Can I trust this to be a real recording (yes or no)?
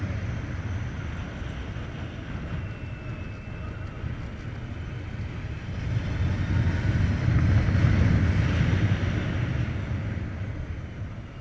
yes